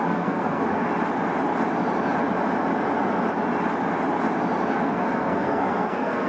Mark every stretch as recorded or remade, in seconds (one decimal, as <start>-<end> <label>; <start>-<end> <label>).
0.0-0.9 remade; 0.9-4.7 recorded; 4.7-6.3 remade